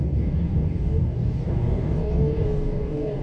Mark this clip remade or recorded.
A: remade